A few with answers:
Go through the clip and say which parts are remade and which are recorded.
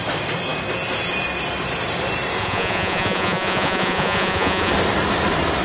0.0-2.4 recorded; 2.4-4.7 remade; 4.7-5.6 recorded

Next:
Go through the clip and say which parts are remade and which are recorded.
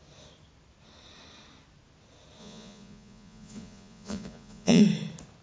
0.0-2.4 recorded; 2.4-4.8 remade; 4.8-5.4 recorded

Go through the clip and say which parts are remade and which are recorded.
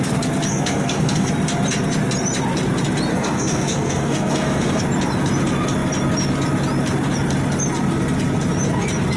0.0-0.5 recorded; 0.5-1.3 remade; 1.3-3.1 recorded; 3.1-4.8 remade; 4.8-9.2 recorded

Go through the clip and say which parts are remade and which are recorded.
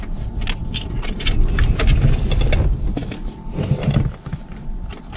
0.0-5.2 recorded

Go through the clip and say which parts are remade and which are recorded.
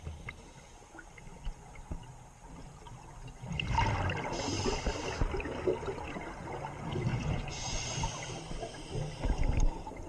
0.0-7.1 recorded; 7.1-7.9 remade; 7.9-10.1 recorded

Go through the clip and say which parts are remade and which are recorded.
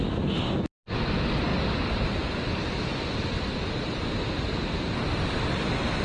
0.0-6.0 recorded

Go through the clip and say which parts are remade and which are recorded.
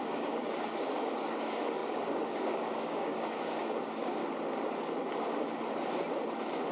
0.0-4.2 remade; 4.2-6.7 recorded